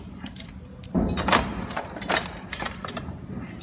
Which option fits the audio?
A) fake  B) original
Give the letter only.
A